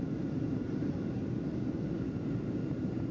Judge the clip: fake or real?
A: real